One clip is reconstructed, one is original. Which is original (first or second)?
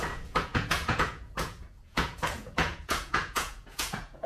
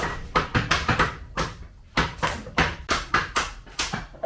second